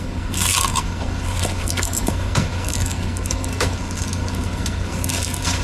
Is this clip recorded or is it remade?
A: remade